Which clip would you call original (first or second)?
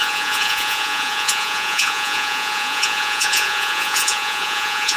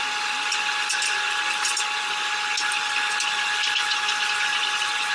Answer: second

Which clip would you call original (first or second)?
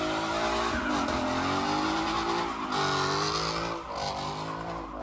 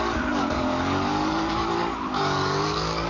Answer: first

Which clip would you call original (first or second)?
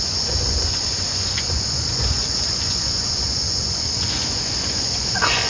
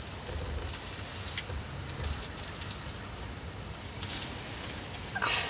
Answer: second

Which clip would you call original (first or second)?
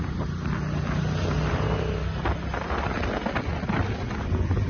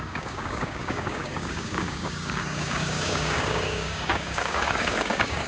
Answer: first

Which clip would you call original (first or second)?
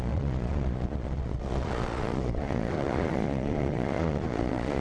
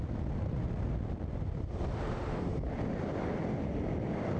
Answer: second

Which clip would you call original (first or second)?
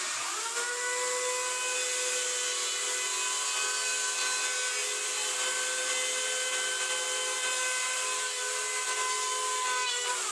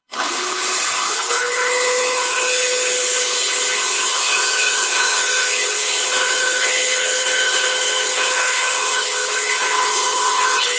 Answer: first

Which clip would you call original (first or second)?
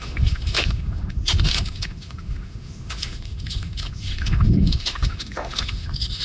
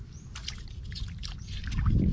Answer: second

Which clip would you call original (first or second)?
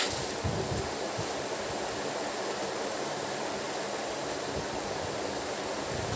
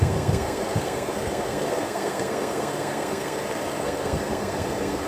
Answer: first